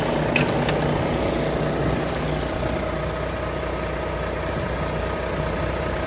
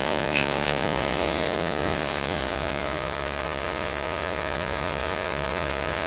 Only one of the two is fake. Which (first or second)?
second